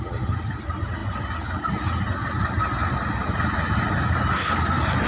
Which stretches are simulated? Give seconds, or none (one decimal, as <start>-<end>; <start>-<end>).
none